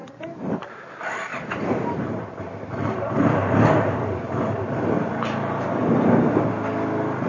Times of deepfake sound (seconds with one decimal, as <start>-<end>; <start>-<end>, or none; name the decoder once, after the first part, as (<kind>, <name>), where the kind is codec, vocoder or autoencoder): 0.0-0.9 (vocoder, BigVGAN v2); 1.3-5.7